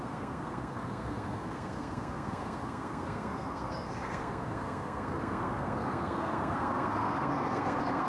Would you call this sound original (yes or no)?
no